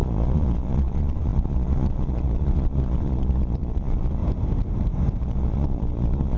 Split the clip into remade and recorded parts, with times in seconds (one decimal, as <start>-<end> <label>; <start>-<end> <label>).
0.0-4.2 remade; 4.2-5.2 recorded; 5.2-6.4 remade